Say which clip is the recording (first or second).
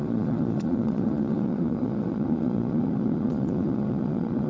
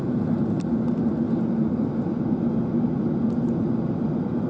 second